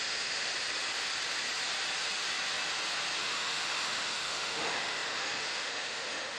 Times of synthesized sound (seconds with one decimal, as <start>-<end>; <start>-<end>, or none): 0.0-0.5; 3.2-6.4

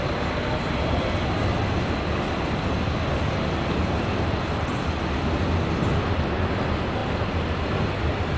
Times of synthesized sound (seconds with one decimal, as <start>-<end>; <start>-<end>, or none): none

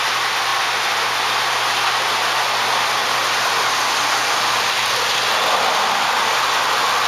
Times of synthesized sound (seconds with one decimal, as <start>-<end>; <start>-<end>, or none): none

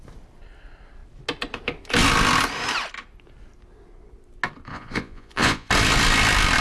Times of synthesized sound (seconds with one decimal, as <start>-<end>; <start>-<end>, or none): 4.7-5.7

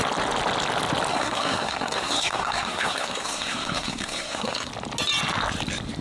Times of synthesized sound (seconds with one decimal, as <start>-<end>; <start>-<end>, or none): 1.1-4.7

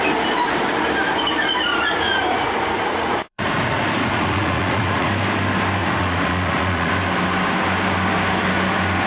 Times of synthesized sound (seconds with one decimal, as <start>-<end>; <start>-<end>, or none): 1.7-5.1; 5.8-6.9